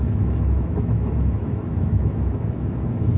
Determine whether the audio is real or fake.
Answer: fake